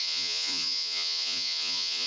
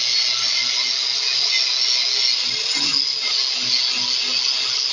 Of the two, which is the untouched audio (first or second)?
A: second